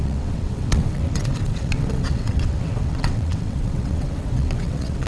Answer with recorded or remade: remade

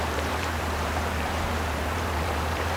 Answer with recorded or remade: remade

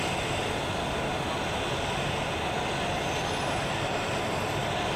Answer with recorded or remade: recorded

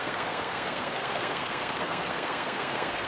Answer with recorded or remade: remade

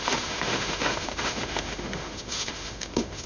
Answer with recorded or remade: remade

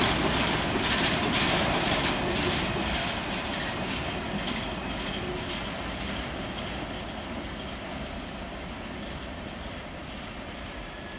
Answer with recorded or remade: recorded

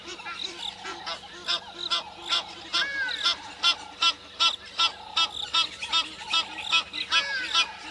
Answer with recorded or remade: recorded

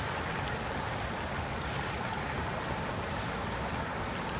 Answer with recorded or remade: recorded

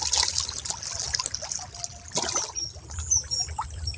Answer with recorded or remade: recorded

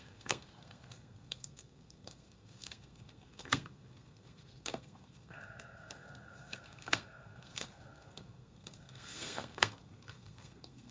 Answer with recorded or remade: remade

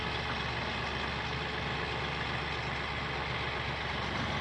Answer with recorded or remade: recorded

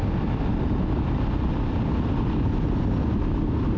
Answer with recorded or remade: recorded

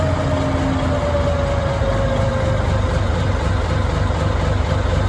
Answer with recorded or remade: recorded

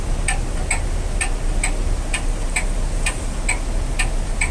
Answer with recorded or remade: recorded